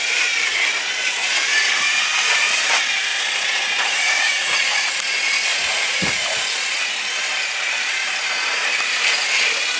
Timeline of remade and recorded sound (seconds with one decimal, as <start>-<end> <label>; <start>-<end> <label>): 0.0-3.1 recorded; 3.1-4.9 remade; 4.9-5.5 recorded; 5.5-6.4 remade; 6.4-9.8 recorded